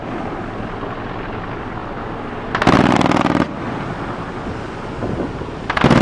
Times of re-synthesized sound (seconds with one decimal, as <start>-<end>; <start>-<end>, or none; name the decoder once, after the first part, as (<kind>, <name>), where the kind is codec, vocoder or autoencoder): none